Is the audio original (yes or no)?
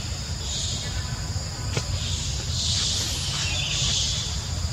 yes